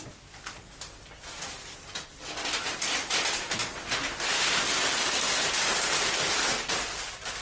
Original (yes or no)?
yes